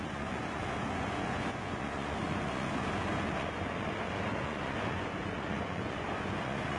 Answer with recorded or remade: remade